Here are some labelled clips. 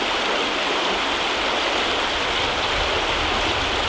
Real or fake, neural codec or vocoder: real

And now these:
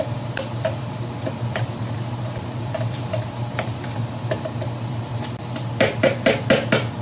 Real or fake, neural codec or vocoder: real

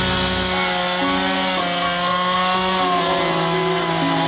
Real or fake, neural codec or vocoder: real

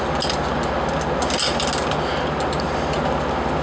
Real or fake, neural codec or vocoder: real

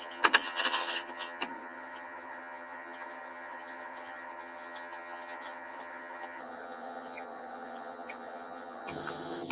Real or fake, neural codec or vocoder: fake, vocoder, HiFi-GAN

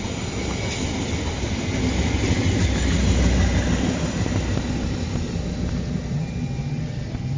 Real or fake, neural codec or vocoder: real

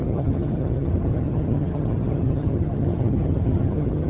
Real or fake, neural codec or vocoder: fake, vocoder, HiFi-GAN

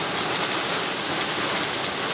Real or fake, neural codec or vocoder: real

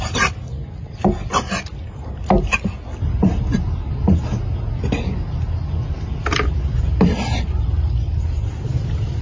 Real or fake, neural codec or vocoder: real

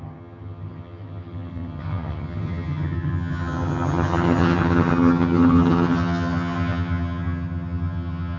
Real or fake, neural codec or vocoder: fake, vocoder, HiFi-GAN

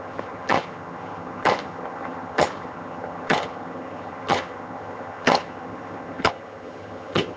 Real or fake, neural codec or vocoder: fake, vocoder, HiFi-GAN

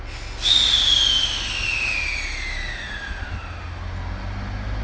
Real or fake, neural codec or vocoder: real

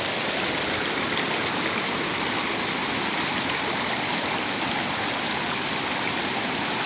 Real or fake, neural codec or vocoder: real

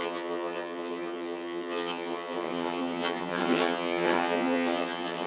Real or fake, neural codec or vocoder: fake, vocoder, HiFi-GAN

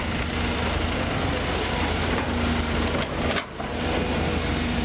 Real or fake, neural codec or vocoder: real